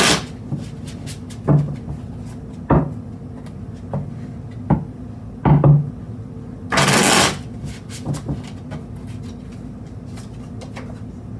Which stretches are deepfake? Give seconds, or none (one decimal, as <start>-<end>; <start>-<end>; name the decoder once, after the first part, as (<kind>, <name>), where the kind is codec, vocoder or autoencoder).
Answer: none